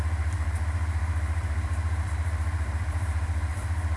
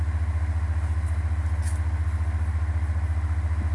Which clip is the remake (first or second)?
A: first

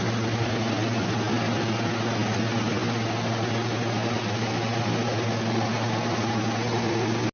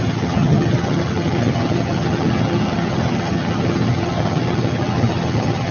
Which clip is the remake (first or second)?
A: second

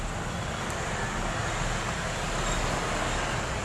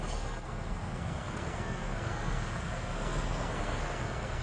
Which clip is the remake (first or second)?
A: second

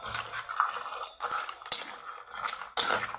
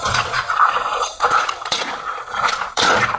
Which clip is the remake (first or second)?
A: second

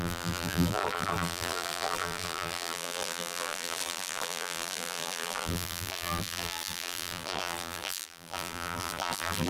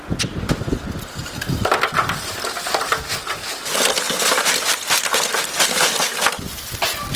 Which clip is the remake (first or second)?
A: first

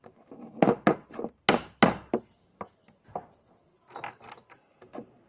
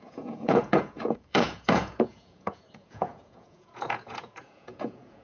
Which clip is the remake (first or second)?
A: second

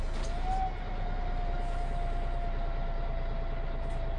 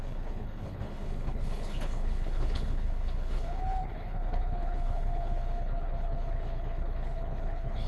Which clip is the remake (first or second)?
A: second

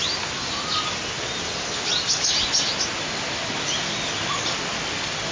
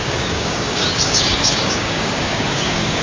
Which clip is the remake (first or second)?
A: second